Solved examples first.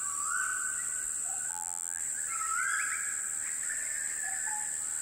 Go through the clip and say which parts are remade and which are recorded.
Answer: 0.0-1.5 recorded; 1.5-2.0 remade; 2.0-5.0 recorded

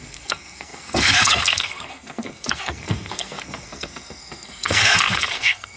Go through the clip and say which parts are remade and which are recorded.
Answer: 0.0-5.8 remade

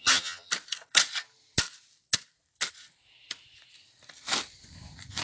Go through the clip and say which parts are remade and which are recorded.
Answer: 0.0-0.5 remade; 0.5-5.2 recorded

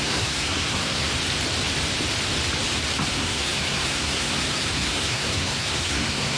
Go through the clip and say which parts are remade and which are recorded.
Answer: 0.0-1.1 remade; 1.1-3.1 recorded; 3.1-6.4 remade

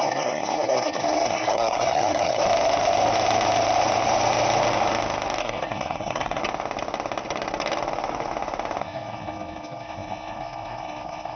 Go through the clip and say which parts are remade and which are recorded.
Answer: 0.0-2.4 remade; 2.4-5.4 recorded; 5.4-6.4 remade; 6.4-8.8 recorded; 8.8-11.4 remade

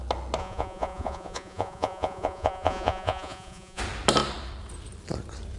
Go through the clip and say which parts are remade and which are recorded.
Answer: 0.0-0.4 recorded; 0.4-3.8 remade; 3.8-5.6 recorded

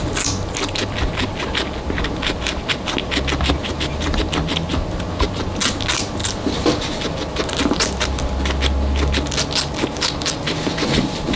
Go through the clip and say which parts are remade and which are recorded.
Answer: 0.0-3.6 recorded; 3.6-4.2 remade; 4.2-11.4 recorded